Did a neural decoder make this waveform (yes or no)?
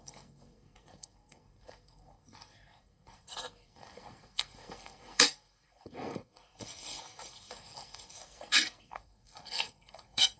yes